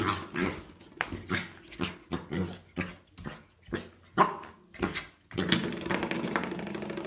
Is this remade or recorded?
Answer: recorded